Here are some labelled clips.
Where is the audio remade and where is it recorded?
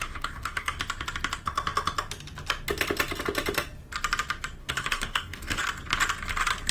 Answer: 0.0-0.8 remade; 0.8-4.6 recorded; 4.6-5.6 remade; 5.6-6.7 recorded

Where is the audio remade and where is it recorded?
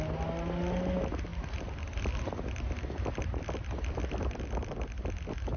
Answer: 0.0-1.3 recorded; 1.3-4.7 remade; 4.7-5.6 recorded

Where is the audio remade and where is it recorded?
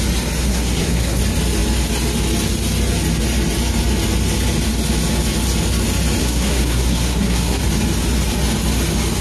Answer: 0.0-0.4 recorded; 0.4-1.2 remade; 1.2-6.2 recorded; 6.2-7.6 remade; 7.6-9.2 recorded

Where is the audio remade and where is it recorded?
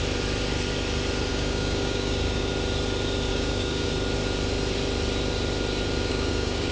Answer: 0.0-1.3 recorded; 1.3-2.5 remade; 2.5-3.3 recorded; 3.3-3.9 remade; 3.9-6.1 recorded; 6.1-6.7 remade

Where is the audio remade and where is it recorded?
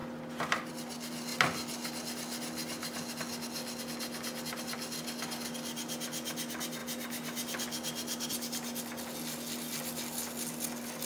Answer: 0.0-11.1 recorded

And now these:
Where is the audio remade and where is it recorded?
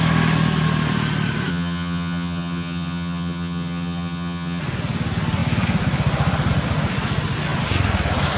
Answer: 0.0-1.5 recorded; 1.5-4.6 remade; 4.6-8.4 recorded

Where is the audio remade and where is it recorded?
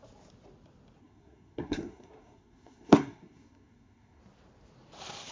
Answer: 0.0-1.0 recorded; 1.0-4.2 remade; 4.2-5.3 recorded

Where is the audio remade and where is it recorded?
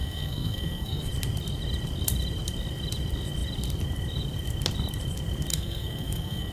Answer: 0.0-1.1 remade; 1.1-5.5 recorded; 5.5-6.5 remade